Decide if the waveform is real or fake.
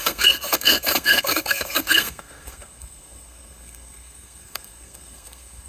fake